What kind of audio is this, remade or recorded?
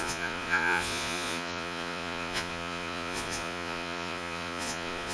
remade